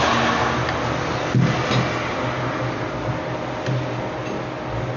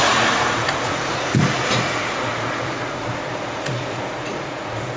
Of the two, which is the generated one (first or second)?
second